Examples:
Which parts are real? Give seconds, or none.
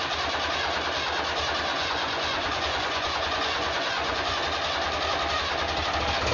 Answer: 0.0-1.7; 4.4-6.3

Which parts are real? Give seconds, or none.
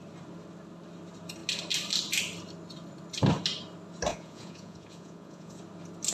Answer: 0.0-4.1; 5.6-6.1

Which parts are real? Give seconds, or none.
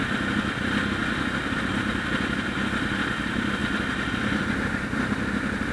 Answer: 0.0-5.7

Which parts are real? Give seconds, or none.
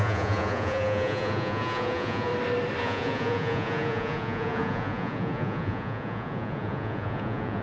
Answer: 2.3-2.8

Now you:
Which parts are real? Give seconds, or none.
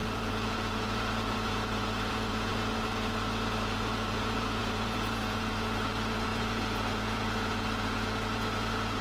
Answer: none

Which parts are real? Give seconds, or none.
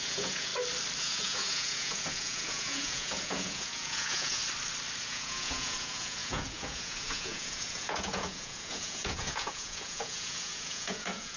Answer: 0.5-1.0; 4.4-5.0